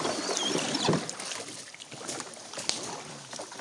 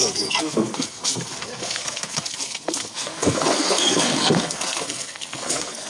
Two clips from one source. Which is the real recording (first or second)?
first